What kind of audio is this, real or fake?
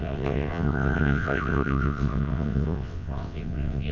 fake